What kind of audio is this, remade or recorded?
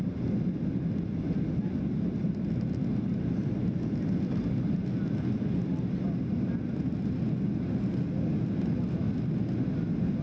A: recorded